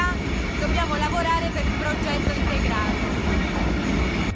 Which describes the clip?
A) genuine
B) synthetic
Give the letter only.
A